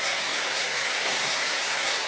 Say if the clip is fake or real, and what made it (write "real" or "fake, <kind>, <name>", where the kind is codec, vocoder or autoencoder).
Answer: fake, codec, SNAC